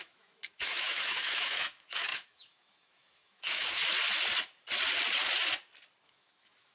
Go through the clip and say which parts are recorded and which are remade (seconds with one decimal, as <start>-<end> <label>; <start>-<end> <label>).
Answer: 0.0-3.8 remade; 3.8-6.0 recorded; 6.0-6.7 remade